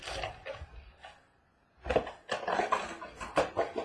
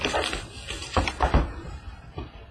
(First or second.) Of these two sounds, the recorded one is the first